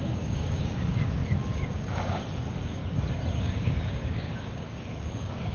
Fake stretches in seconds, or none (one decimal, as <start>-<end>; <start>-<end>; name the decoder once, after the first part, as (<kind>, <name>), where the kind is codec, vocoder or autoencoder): 0.0-2.8 (codec, DAC); 3.4-5.5